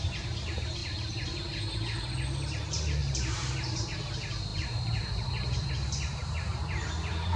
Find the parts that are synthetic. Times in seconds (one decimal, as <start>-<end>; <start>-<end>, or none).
3.0-4.0; 4.5-5.7; 6.2-6.7